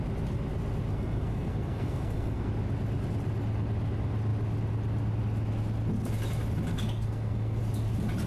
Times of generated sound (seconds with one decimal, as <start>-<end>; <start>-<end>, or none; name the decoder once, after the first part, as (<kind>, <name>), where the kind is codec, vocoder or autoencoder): 0.9-2.5 (codec, SNAC); 6.7-7.6